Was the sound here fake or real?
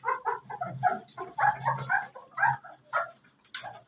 real